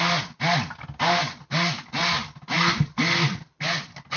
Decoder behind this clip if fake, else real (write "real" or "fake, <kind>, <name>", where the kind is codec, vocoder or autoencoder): real